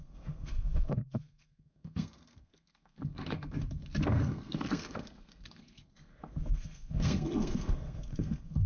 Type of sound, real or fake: fake